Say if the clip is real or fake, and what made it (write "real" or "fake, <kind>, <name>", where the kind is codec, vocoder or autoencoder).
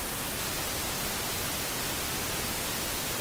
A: real